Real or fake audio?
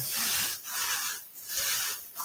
real